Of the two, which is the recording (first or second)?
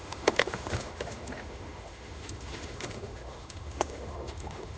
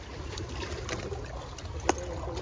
second